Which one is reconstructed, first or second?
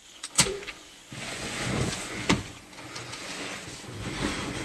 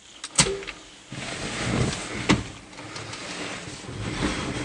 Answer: first